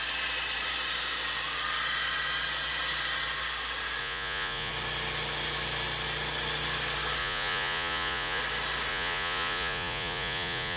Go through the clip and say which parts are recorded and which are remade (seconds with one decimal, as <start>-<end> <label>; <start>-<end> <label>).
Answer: 0.0-4.0 recorded; 4.0-4.7 remade; 4.7-7.2 recorded; 7.2-8.4 remade; 8.4-8.9 recorded; 8.9-10.8 remade